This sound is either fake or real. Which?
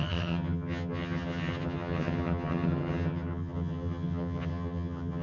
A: fake